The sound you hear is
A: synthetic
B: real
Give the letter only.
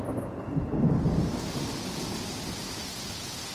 B